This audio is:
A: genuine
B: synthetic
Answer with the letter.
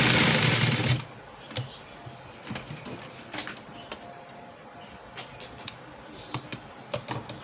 A